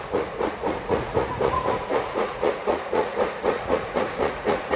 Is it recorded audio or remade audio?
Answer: remade